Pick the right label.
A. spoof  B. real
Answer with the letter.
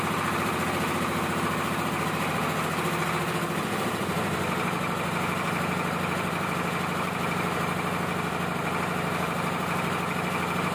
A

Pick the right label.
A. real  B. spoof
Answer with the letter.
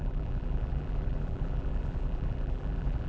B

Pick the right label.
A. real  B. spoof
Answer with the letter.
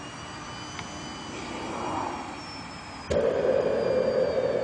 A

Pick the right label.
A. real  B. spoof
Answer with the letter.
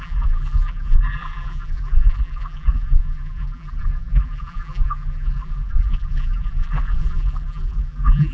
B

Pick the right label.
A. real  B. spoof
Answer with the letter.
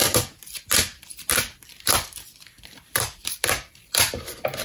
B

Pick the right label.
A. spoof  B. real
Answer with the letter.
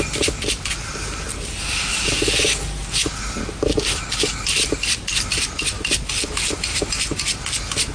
B